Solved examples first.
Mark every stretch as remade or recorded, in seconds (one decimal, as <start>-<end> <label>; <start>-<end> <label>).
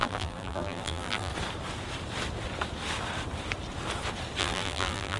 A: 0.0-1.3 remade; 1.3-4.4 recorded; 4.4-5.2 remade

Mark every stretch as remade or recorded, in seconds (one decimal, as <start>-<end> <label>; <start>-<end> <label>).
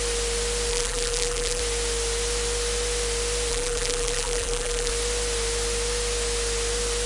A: 0.0-0.7 recorded; 0.7-1.6 remade; 1.6-3.5 recorded; 3.5-4.9 remade; 4.9-7.1 recorded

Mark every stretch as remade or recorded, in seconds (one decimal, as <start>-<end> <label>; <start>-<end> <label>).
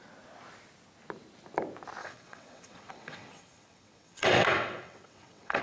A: 0.0-2.0 recorded; 2.0-5.6 remade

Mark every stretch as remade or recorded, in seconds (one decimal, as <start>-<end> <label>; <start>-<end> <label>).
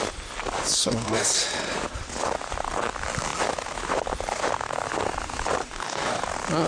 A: 0.0-0.8 recorded; 0.8-1.4 remade; 1.4-5.6 recorded; 5.6-6.2 remade; 6.2-6.7 recorded